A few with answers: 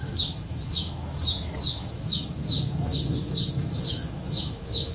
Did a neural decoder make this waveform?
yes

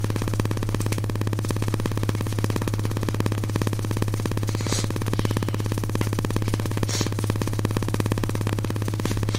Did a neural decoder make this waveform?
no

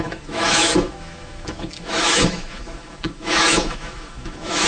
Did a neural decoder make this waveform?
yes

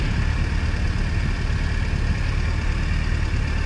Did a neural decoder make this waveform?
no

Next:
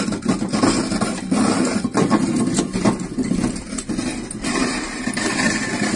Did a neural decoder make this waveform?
no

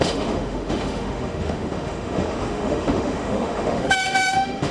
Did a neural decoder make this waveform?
yes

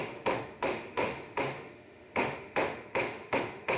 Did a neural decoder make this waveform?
yes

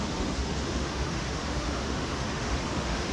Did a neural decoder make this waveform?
yes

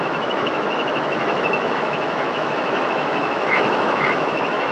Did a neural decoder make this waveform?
yes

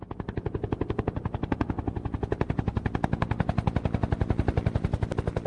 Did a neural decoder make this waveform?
no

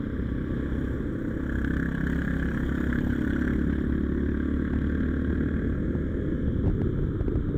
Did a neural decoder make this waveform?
no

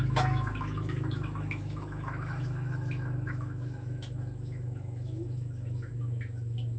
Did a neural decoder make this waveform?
yes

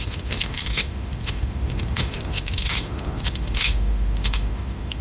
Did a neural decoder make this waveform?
yes